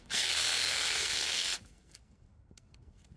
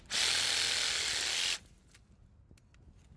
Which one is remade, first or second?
first